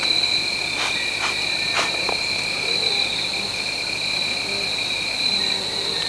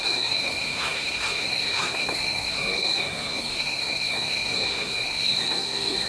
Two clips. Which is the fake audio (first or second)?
second